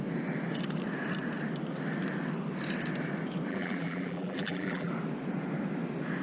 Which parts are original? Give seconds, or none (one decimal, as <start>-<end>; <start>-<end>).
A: 0.0-3.5; 4.9-6.2